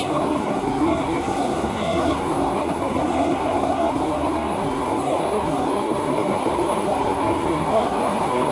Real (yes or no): no